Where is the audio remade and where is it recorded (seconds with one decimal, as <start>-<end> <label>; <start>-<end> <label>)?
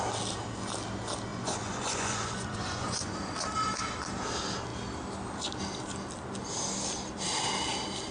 0.0-1.3 recorded; 1.3-3.3 remade; 3.3-8.1 recorded